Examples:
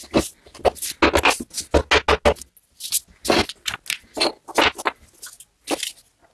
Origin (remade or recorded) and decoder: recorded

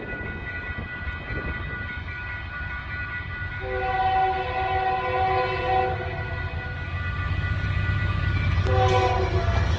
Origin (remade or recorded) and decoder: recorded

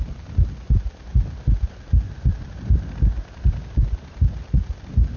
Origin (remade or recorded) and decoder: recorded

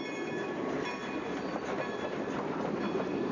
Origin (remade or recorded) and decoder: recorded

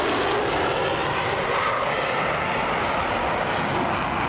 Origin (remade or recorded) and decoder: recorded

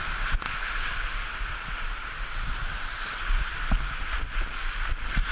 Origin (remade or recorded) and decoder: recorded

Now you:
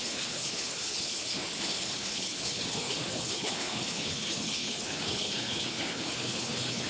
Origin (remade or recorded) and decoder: remade, codec, HILCodec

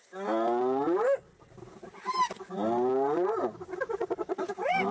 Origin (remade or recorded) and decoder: recorded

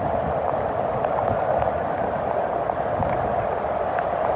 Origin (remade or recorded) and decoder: recorded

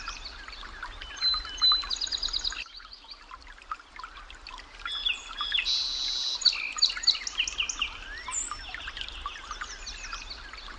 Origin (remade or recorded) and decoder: recorded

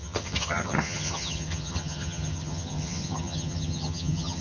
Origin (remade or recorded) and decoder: remade, vocoder, HiFi-GAN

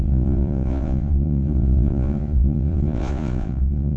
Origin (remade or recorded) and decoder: remade, vocoder, Vocos